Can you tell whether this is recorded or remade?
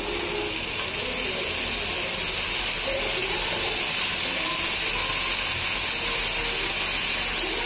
recorded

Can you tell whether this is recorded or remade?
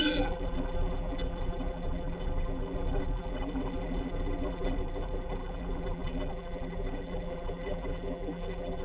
remade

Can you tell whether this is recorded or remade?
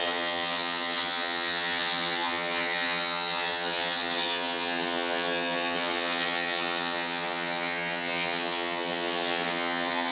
remade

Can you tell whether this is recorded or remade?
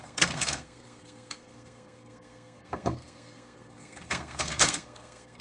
remade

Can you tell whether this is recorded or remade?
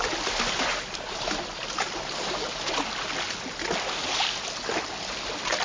recorded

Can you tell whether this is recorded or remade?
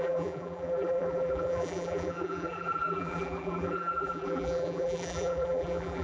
remade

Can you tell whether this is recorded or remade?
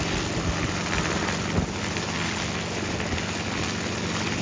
recorded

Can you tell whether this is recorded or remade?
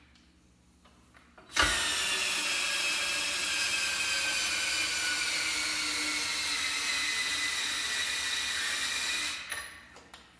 recorded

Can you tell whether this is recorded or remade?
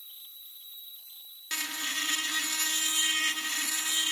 recorded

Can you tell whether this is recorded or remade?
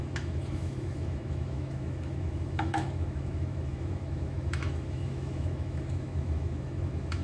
remade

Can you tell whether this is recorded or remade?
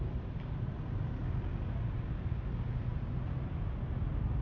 recorded